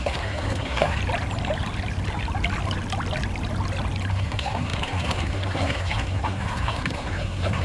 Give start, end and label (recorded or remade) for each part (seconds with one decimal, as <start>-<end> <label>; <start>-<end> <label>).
0.0-1.0 remade; 1.0-4.1 recorded; 4.1-7.6 remade